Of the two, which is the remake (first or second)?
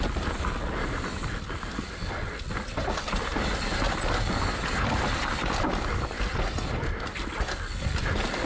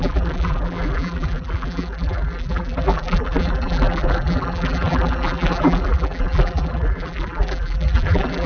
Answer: second